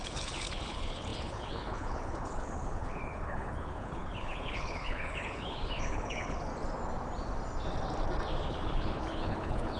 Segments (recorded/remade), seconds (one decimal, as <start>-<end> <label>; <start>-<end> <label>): 0.0-6.5 remade; 6.5-8.5 recorded; 8.5-9.8 remade